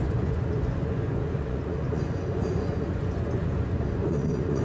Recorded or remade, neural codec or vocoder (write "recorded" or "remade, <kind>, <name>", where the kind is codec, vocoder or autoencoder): remade, vocoder, Vocos